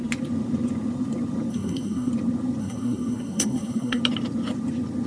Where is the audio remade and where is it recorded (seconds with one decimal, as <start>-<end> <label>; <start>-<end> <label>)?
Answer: 0.0-1.5 recorded; 1.5-2.1 remade; 2.1-2.6 recorded; 2.6-4.0 remade; 4.0-5.1 recorded